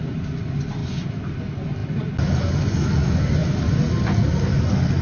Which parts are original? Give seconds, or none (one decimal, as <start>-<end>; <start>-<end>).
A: 0.0-3.4; 4.4-5.0